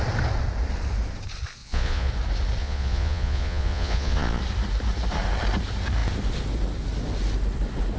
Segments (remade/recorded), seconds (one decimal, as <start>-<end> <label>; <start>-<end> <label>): 0.0-1.6 recorded; 1.6-2.1 remade; 2.1-2.6 recorded; 2.6-4.4 remade; 4.4-8.0 recorded